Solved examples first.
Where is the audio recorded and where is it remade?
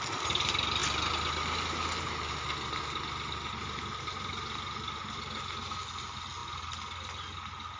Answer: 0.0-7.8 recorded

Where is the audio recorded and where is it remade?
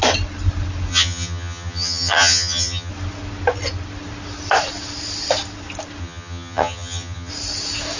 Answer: 0.0-0.9 recorded; 0.9-2.9 remade; 2.9-6.0 recorded; 6.0-7.3 remade; 7.3-8.0 recorded